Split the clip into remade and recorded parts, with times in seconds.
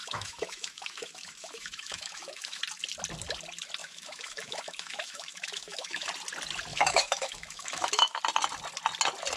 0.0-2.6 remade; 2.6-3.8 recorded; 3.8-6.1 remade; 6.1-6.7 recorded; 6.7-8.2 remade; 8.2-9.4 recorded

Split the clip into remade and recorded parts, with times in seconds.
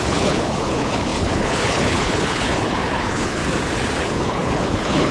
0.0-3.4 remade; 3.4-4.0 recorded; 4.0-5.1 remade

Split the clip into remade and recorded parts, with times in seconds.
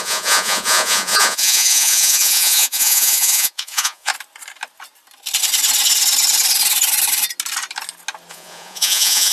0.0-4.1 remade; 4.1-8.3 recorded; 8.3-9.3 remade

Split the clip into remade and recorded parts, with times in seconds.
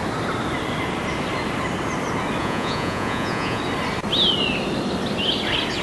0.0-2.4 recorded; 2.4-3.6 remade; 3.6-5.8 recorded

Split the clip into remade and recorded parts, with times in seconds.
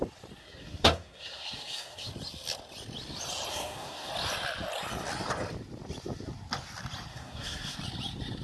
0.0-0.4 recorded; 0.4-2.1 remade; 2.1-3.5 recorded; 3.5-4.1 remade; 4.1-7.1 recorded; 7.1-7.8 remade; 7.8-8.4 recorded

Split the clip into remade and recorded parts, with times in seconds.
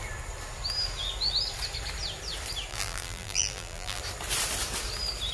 0.0-2.7 recorded; 2.7-4.0 remade; 4.0-5.3 recorded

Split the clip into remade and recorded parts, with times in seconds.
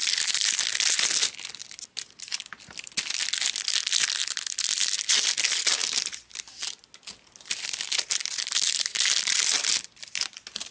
0.0-10.7 recorded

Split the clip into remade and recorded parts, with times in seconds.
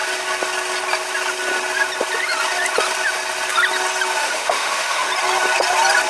0.0-4.2 recorded; 4.2-5.1 remade; 5.1-6.1 recorded